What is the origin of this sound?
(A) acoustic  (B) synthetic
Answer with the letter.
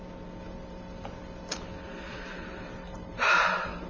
A